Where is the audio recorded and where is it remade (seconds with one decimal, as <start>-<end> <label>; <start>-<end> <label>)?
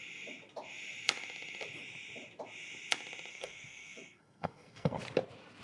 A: 0.0-3.3 recorded; 3.3-5.0 remade; 5.0-5.6 recorded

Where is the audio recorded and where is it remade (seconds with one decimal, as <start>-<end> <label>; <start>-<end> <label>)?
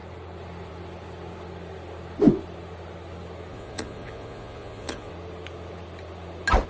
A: 0.0-3.5 recorded; 3.5-5.1 remade; 5.1-6.7 recorded